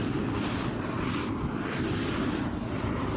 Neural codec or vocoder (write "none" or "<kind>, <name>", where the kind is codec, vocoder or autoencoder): none